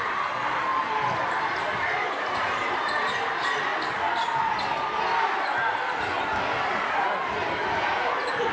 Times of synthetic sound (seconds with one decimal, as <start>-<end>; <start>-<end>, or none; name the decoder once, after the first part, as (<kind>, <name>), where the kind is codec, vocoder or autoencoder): none